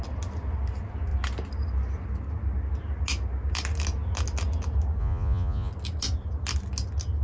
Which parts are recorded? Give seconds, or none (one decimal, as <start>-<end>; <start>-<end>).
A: 0.0-5.0; 5.7-7.2